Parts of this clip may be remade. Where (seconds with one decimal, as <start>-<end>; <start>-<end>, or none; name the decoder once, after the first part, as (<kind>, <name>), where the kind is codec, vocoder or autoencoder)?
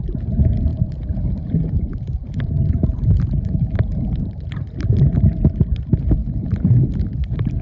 0.7-5.2 (vocoder, BigVGAN v2); 6.2-6.8